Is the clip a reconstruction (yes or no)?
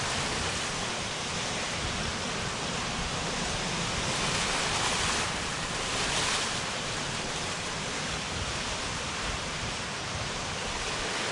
no